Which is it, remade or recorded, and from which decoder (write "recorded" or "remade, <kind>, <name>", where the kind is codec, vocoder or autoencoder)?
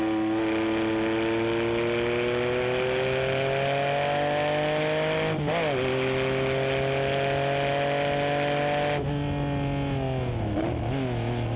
recorded